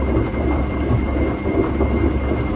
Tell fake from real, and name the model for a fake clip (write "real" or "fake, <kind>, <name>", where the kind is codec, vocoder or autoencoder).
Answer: real